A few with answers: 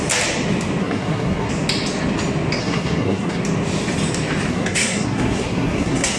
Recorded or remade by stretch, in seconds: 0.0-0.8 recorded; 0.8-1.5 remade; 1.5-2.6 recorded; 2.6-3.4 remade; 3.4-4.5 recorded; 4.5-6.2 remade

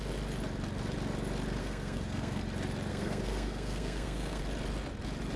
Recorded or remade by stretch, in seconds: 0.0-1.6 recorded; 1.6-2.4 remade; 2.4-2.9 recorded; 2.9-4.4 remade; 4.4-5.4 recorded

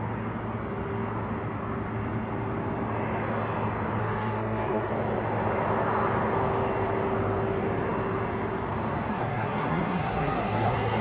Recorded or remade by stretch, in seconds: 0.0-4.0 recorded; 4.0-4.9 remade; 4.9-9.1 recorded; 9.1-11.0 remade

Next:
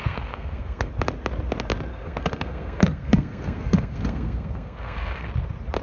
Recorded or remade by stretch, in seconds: 0.0-0.9 remade; 0.9-1.9 recorded; 1.9-5.3 remade; 5.3-5.8 recorded

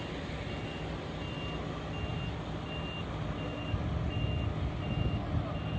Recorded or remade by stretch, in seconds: 0.0-5.8 recorded

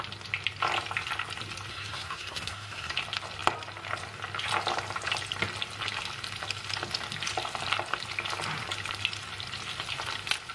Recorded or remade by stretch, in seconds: 0.0-1.7 recorded; 1.7-2.9 remade; 2.9-10.5 recorded

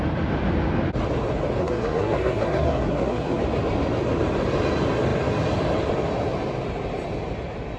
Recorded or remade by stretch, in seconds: 0.0-1.6 recorded; 1.6-3.4 remade; 3.4-7.8 recorded